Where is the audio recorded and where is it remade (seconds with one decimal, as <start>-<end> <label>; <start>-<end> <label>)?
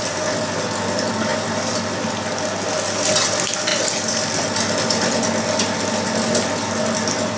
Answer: 0.0-7.4 recorded